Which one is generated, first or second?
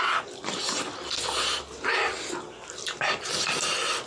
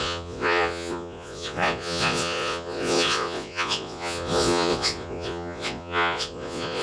second